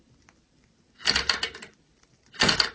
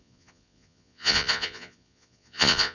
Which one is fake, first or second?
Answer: second